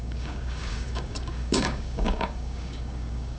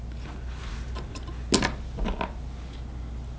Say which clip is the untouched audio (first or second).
second